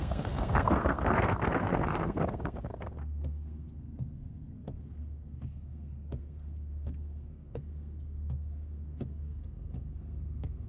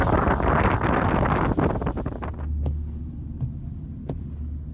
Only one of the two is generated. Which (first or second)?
first